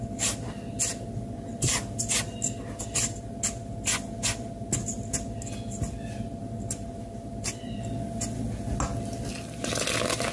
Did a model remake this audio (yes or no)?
no